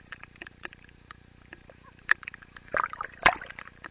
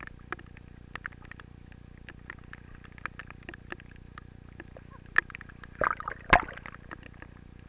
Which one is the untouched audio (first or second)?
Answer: second